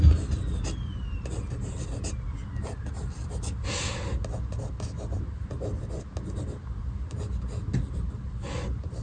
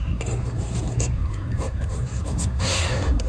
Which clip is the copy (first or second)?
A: second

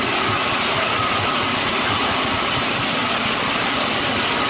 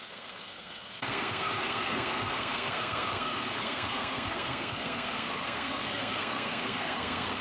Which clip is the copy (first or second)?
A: second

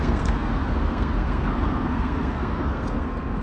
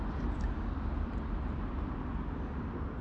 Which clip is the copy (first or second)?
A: first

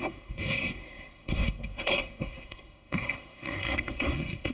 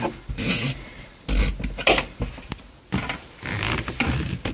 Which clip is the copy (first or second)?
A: first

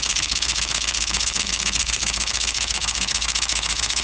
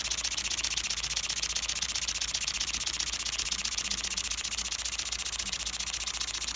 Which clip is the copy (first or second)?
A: first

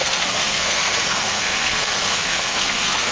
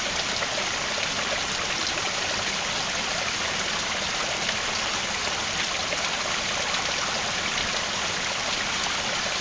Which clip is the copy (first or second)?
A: first